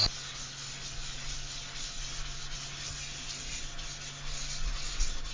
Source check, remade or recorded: recorded